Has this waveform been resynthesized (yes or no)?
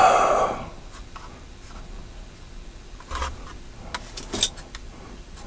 no